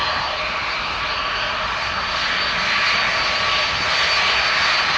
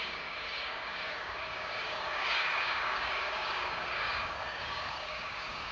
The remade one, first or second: second